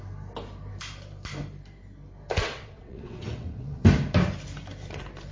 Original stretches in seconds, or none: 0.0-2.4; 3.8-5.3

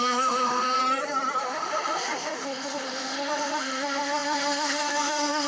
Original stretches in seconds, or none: 0.8-1.4

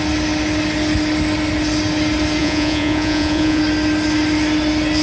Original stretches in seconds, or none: 0.0-2.4; 3.6-5.0

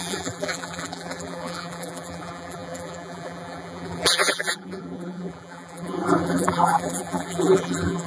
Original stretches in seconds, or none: none

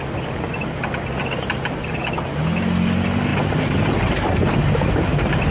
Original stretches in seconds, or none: 0.0-3.3

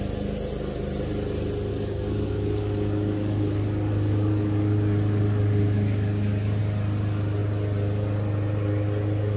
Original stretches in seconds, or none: 0.0-1.7; 6.6-9.4